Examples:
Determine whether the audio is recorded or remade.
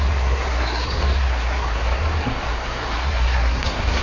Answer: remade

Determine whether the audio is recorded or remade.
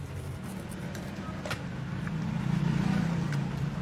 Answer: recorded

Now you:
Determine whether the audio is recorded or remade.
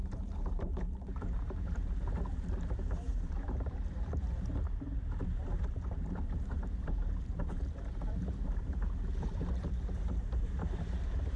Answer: remade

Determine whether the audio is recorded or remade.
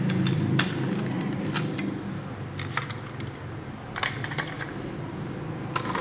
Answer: recorded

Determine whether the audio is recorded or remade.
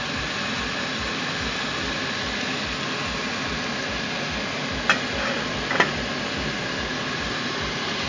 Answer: recorded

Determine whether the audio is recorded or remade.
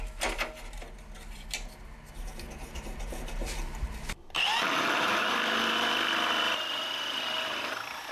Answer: recorded